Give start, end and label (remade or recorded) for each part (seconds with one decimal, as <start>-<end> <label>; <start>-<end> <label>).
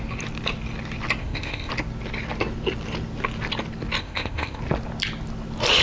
0.0-1.2 recorded; 1.2-1.7 remade; 1.7-4.0 recorded; 4.0-4.6 remade; 4.6-5.8 recorded